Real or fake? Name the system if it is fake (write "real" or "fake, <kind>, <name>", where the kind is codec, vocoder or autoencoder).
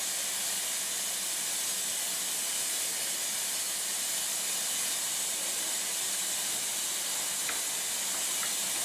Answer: real